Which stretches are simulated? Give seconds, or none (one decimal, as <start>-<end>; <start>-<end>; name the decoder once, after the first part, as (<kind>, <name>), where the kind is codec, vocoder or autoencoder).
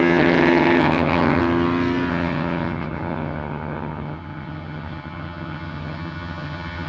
0.0-1.4 (vocoder, HiFi-GAN); 2.1-6.9